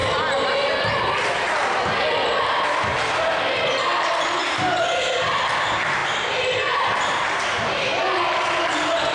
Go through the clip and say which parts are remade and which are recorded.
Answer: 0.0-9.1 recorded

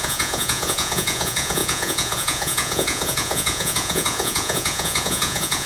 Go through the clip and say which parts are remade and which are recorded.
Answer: 0.0-5.7 remade

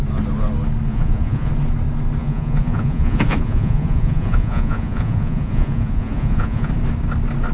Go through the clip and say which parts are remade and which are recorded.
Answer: 0.0-0.9 recorded; 0.9-1.5 remade; 1.5-2.2 recorded; 2.2-6.7 remade; 6.7-7.5 recorded